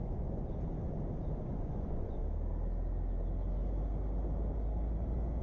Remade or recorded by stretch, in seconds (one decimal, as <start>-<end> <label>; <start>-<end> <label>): 0.0-0.5 remade; 0.5-1.4 recorded; 1.4-2.2 remade; 2.2-5.4 recorded